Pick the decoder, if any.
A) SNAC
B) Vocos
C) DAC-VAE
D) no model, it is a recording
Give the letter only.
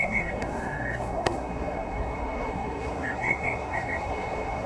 A